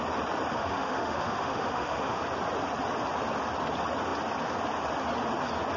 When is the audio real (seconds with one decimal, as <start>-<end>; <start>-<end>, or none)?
0.0-0.5; 2.2-5.8